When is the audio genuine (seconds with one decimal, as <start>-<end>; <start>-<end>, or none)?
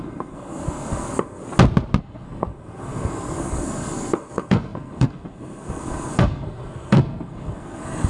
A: 1.4-2.0